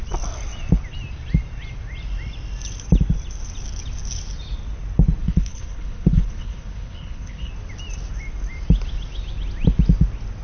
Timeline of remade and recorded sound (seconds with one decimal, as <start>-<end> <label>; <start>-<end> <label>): 0.0-5.2 recorded; 5.2-7.5 remade; 7.5-10.4 recorded